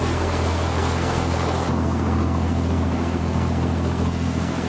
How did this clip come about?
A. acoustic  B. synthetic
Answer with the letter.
B